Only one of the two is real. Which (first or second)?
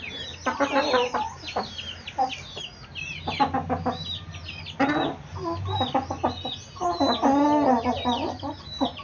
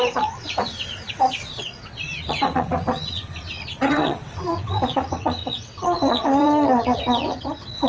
first